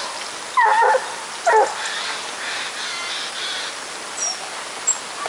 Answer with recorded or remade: recorded